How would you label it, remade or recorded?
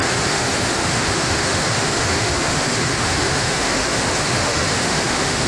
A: remade